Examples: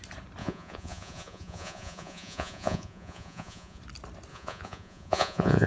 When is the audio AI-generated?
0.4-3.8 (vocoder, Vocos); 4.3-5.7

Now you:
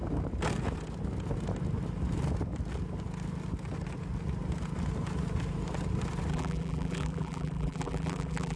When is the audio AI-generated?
6.3-8.6 (vocoder, BigVGAN v2)

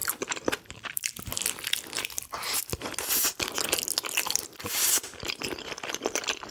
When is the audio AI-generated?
0.0-1.3 (vocoder, BigVGAN v2); 4.5-6.5

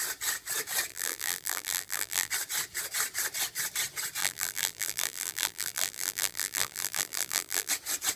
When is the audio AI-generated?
0.9-2.3 (vocoder, BigVGAN v2); 4.2-7.7

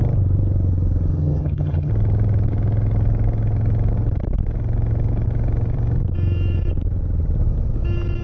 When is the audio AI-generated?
1.1-1.9 (vocoder, HiFi-GAN)